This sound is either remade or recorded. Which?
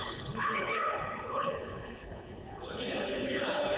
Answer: remade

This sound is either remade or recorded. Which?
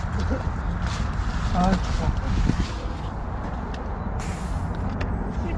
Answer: recorded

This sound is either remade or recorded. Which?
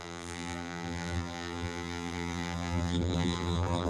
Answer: remade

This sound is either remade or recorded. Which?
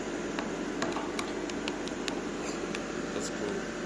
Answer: recorded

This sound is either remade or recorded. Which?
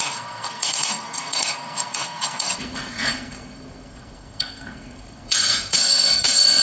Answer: remade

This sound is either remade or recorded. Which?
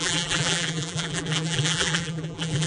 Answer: remade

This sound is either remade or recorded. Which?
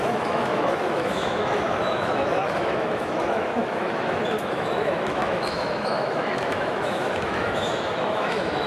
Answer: remade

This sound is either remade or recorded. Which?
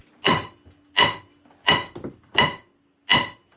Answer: recorded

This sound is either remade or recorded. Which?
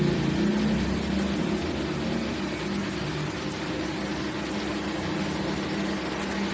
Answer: recorded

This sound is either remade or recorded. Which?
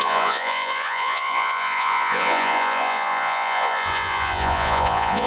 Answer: remade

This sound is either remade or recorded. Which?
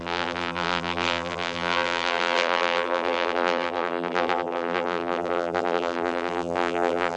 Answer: remade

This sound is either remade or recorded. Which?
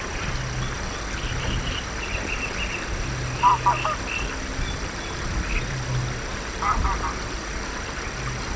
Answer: recorded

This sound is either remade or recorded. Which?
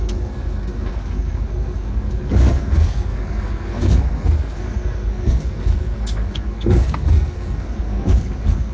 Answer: remade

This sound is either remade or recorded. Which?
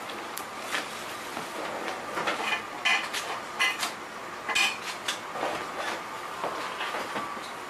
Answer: recorded